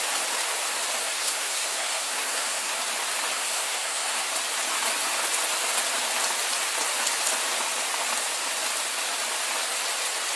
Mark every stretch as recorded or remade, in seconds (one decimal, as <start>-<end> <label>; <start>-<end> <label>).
0.0-1.0 recorded; 1.0-2.8 remade; 2.8-3.3 recorded; 3.3-4.3 remade; 4.3-10.4 recorded